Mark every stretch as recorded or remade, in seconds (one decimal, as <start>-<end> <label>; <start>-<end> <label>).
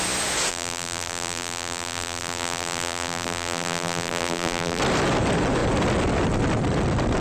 0.0-0.5 recorded; 0.5-4.8 remade; 4.8-7.2 recorded